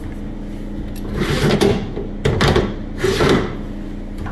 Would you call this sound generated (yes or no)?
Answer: no